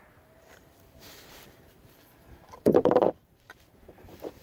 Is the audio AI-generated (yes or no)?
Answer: yes